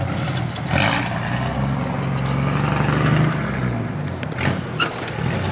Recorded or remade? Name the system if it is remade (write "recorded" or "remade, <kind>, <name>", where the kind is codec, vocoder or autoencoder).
recorded